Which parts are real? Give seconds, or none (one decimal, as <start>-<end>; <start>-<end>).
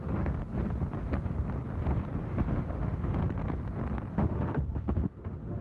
0.4-2.2; 3.2-4.1